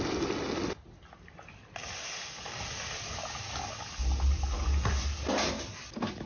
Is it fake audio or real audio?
real